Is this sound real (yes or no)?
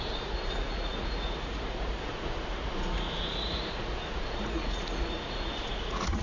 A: no